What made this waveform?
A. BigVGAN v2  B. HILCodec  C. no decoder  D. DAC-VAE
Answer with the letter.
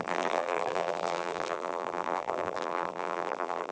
A